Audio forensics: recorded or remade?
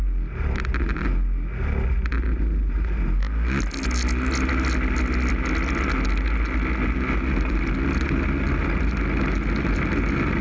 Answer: recorded